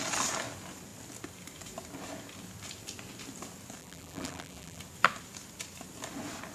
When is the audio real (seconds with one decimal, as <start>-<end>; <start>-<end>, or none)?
0.0-3.8; 4.8-6.5